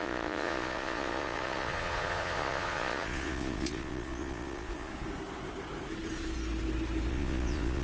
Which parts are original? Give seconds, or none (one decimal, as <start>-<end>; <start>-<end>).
4.9-7.1